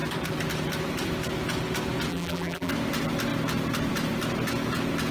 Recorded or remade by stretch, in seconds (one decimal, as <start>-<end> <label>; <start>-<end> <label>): 0.0-2.1 recorded; 2.1-2.7 remade; 2.7-5.1 recorded